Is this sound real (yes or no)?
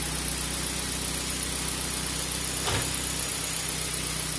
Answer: yes